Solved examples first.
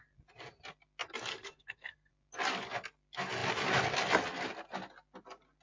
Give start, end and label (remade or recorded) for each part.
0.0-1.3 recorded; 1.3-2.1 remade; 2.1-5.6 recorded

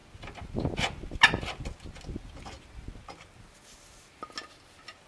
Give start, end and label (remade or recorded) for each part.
0.0-5.1 recorded